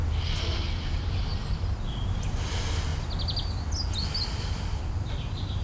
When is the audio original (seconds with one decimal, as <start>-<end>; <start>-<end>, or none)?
0.0-5.6

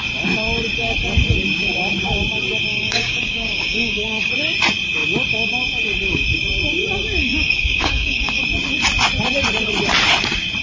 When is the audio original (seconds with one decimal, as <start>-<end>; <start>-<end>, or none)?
0.0-2.7; 4.3-7.2; 8.4-10.6

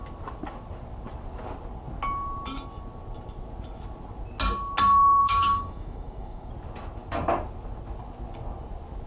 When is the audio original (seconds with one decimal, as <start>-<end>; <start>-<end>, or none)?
0.0-5.2; 6.5-9.1

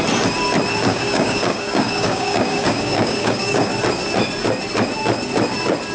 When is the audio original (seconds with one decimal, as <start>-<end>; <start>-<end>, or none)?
0.0-0.9; 3.7-5.9